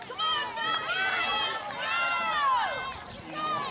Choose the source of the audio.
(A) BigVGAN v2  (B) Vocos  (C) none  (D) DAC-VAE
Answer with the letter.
C